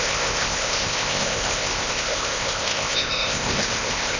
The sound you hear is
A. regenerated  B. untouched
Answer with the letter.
A